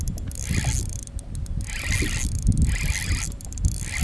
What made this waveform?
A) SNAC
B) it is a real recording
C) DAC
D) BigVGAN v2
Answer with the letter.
B